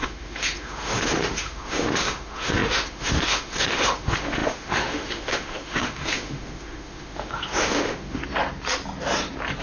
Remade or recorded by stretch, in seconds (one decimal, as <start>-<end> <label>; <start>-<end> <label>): 0.0-8.2 remade; 8.2-9.6 recorded